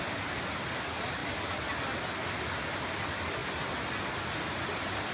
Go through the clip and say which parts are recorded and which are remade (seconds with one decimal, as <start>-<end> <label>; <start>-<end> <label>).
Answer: 0.0-5.1 recorded